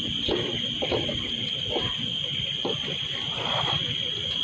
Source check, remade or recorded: recorded